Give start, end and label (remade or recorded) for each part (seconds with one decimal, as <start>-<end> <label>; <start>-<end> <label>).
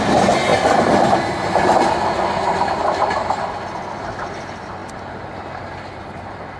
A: 0.0-6.6 recorded